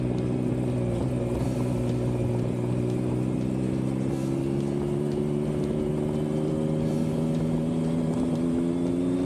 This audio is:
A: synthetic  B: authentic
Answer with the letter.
B